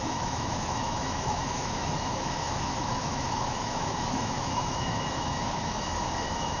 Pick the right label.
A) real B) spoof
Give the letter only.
B